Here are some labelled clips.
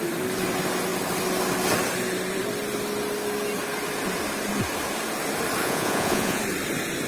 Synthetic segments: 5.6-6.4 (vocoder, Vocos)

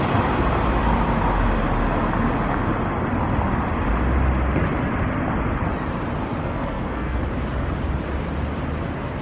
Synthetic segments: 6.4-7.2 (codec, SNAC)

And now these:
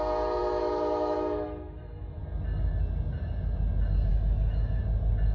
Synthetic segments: 0.4-2.2 (autoencoder, DAC-VAE); 4.1-4.8